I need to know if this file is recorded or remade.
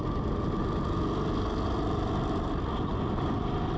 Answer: recorded